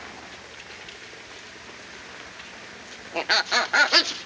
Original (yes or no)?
yes